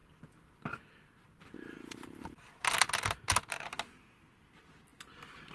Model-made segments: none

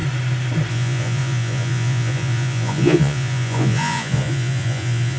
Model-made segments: 0.7-5.2 (vocoder, Vocos)

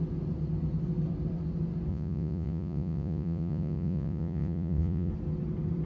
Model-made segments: 1.9-5.1 (vocoder, Vocos)

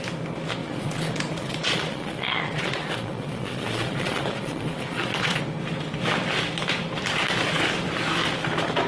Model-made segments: 0.6-5.4 (vocoder, Vocos)

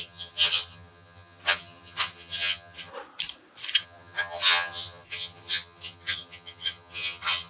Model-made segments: 0.0-2.9 (vocoder, HiFi-GAN); 3.8-7.5

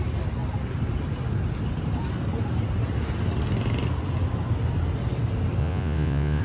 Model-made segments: 5.6-6.4 (vocoder, Vocos)